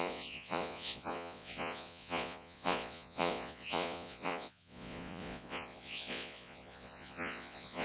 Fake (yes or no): yes